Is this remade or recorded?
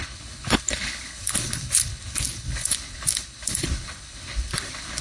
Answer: remade